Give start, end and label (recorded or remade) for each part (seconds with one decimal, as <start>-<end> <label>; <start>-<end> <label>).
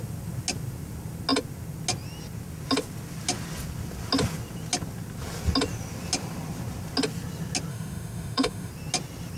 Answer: 0.0-7.7 recorded; 7.7-8.7 remade; 8.7-9.4 recorded